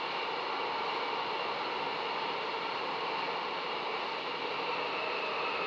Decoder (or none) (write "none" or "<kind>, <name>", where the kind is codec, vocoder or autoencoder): none